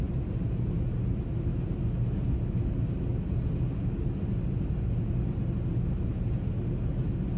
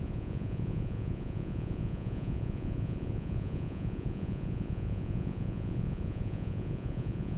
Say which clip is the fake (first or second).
second